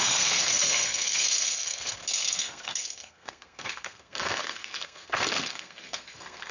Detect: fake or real fake